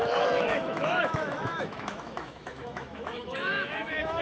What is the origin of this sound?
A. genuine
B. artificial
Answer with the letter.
B